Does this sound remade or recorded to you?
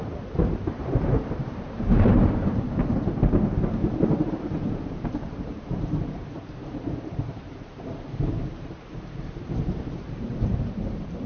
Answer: remade